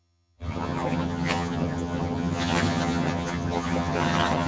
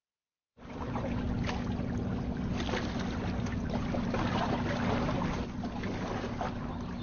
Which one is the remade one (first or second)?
first